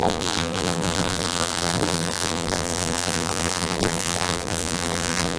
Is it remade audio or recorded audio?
remade